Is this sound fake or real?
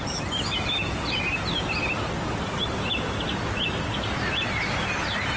real